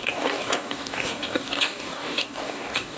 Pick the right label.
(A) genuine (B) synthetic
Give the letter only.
B